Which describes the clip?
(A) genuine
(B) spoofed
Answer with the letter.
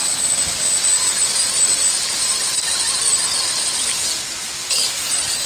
A